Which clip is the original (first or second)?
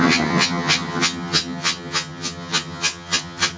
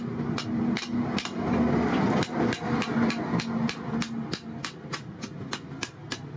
second